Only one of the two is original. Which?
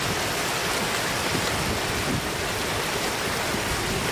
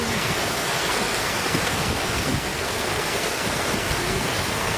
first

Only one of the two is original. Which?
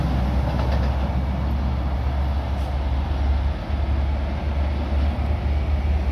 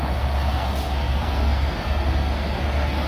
first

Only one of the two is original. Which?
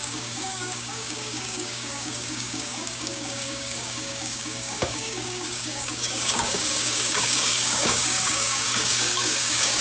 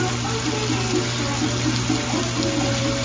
second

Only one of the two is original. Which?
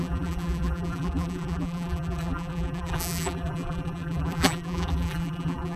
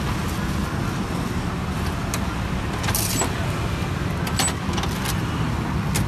second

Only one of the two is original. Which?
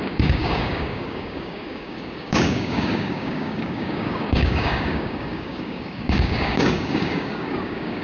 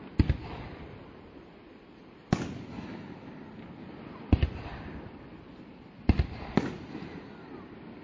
second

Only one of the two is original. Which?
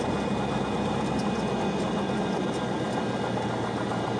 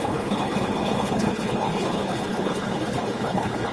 first